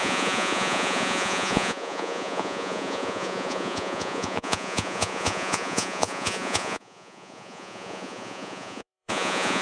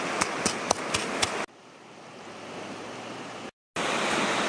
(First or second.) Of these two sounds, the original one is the second